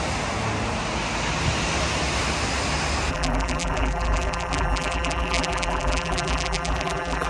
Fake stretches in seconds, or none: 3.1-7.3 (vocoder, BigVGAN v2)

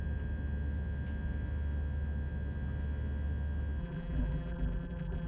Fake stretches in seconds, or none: 3.8-5.3 (vocoder, BigVGAN v2)

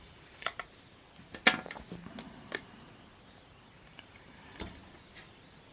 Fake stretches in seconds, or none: 0.0-0.5 (vocoder, BigVGAN v2); 3.9-4.8